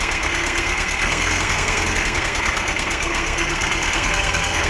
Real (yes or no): no